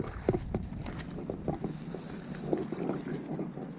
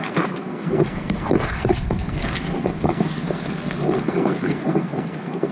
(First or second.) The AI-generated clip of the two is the second